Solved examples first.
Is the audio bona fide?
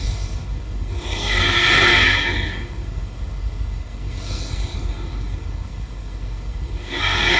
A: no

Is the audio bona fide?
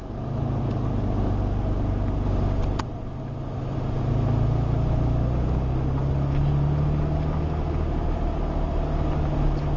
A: yes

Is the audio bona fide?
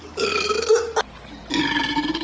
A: yes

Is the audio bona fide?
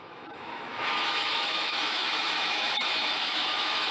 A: no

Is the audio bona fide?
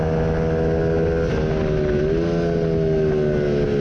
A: yes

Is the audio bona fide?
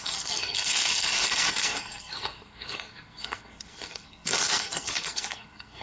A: no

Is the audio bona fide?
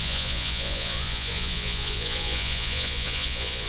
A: no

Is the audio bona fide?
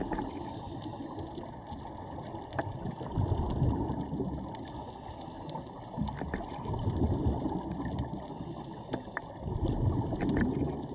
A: yes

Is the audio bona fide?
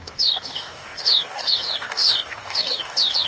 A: no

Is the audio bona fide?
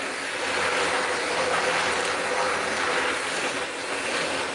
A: yes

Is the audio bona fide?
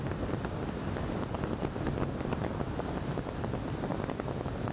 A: yes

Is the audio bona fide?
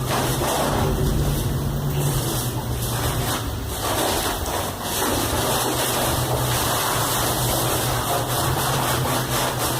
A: no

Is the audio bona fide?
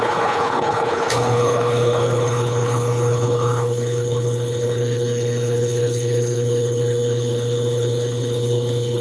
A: no